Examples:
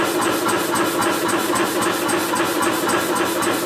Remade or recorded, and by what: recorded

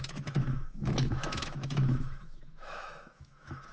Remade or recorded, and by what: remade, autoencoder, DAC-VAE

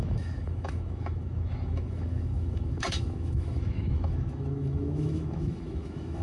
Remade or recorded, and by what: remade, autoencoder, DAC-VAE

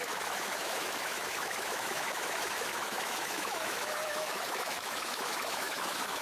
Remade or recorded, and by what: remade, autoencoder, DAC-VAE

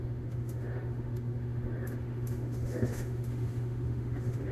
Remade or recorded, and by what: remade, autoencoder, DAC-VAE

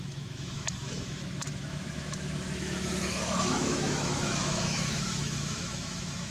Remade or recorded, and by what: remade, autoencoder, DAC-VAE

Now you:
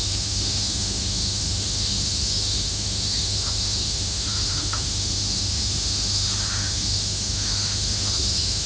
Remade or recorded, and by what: remade, autoencoder, DAC-VAE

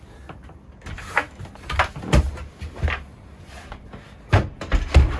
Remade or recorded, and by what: recorded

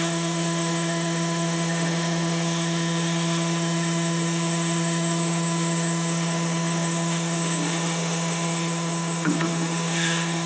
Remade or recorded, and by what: remade, autoencoder, DAC-VAE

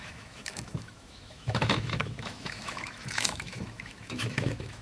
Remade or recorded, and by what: remade, autoencoder, DAC-VAE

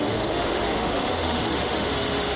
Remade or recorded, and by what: remade, autoencoder, DAC-VAE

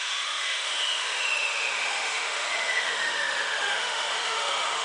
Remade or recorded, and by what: remade, autoencoder, DAC-VAE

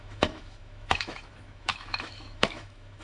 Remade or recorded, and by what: remade, autoencoder, DAC-VAE